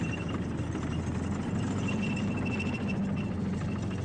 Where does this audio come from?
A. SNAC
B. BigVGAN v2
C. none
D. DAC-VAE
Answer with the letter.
C